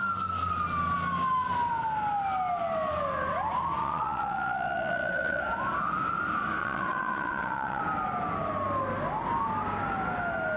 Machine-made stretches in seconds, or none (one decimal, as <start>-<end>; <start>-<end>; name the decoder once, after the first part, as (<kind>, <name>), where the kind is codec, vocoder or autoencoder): 3.8-5.4 (vocoder, WaveNeXt); 6.6-7.8